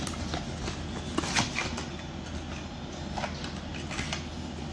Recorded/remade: recorded